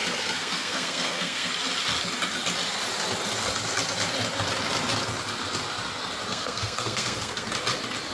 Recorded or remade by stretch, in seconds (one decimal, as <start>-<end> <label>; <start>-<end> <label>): 0.0-1.5 remade; 1.5-6.3 recorded; 6.3-7.5 remade; 7.5-8.1 recorded